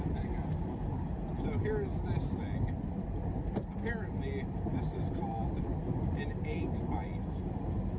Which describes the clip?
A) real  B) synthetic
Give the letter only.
A